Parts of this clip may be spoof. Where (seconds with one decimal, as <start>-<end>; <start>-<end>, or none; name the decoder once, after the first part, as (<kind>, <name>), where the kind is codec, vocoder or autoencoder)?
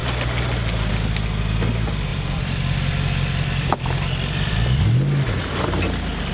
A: 2.1-4.8 (vocoder, BigVGAN v2)